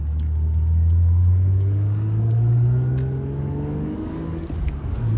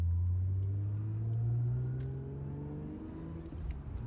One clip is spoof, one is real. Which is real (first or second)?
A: second